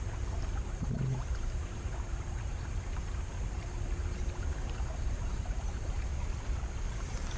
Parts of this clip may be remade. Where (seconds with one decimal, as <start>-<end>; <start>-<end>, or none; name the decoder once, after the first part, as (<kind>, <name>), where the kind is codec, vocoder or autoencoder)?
0.0-6.1 (vocoder, BigVGAN v2); 6.9-7.4